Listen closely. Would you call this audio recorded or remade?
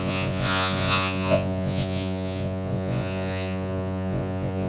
remade